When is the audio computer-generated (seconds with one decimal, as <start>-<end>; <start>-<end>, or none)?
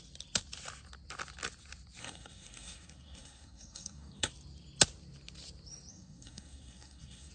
2.0-4.3; 5.9-7.3